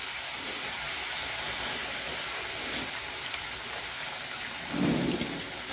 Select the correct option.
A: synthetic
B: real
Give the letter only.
B